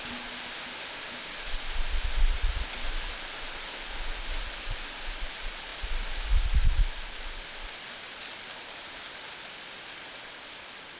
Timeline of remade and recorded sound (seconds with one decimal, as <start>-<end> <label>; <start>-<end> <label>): 0.0-11.0 recorded